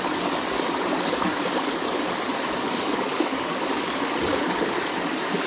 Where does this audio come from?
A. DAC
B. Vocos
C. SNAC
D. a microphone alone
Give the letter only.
A